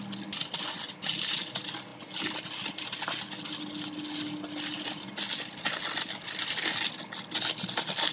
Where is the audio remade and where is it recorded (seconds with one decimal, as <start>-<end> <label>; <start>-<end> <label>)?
0.0-8.1 recorded